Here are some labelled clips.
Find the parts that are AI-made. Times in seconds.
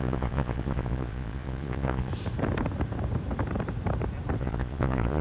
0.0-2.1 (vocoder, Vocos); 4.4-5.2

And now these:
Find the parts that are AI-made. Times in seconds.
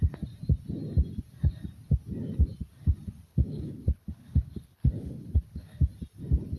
3.3-5.8 (codec, HILCodec)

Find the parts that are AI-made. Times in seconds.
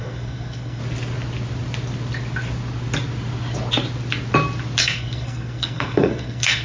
0.0-0.8 (codec, SNAC); 4.8-6.6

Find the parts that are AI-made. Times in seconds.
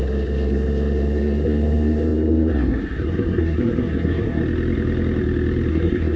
0.0-4.4 (codec, SNAC); 5.7-6.2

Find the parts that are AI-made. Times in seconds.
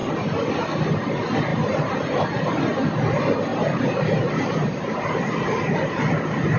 0.0-0.5 (vocoder, BigVGAN v2); 1.5-2.9; 3.5-4.0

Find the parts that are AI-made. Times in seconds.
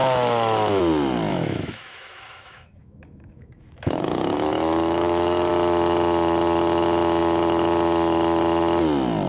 0.0-0.8 (autoencoder, DAC-VAE); 1.3-5.5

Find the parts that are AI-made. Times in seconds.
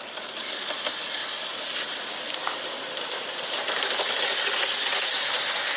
none